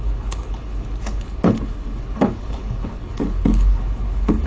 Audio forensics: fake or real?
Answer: fake